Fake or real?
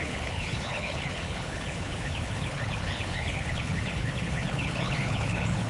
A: fake